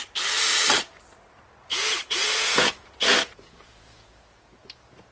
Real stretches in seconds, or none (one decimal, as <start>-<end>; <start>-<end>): 0.0-1.7